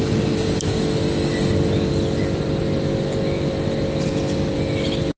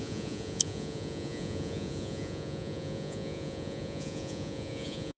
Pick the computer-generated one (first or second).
second